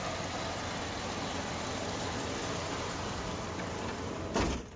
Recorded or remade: recorded